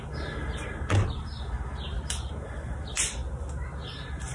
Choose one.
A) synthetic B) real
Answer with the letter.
B